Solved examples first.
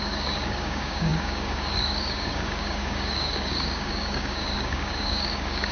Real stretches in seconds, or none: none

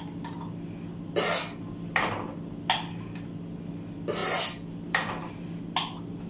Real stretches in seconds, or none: 0.0-6.3